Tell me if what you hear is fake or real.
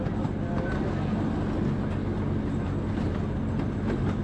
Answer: real